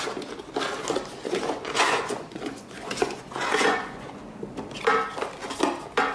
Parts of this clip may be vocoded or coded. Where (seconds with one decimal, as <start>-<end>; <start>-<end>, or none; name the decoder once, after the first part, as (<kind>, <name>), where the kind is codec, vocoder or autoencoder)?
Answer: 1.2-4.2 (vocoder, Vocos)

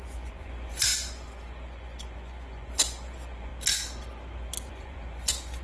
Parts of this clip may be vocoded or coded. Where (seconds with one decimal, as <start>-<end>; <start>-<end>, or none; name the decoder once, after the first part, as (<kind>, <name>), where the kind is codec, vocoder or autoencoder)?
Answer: 0.0-3.5 (vocoder, Vocos); 4.7-5.6

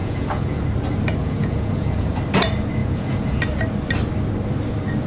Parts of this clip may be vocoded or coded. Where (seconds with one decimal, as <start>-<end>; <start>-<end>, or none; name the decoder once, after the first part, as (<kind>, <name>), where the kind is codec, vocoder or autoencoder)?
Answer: 0.0-0.6 (vocoder, Vocos); 1.2-2.2; 2.8-3.4